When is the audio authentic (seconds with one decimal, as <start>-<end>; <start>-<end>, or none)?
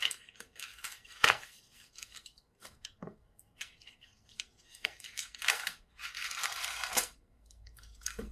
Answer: none